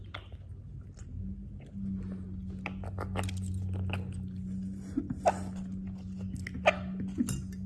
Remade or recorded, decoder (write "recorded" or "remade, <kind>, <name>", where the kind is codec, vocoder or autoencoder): recorded